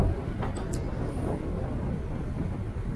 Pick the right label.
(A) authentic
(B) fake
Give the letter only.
A